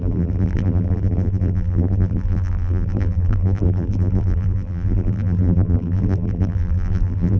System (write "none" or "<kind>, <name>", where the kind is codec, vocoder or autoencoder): vocoder, BigVGAN v2